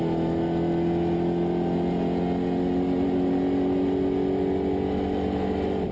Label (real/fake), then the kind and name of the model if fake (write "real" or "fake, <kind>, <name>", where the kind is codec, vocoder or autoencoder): real